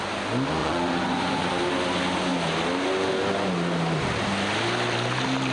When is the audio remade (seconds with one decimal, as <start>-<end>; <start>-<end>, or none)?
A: 0.6-1.6